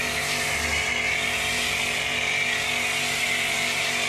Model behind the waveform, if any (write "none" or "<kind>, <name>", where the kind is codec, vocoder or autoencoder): none